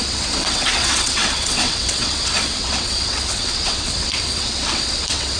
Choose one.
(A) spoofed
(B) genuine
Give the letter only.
A